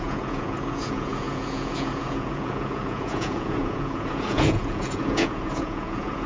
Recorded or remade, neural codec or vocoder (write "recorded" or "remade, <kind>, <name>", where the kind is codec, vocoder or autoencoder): remade, vocoder, Vocos